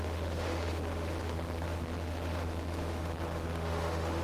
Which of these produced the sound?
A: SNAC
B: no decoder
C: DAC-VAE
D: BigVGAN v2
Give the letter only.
C